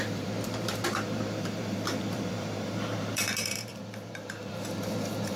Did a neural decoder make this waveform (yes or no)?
yes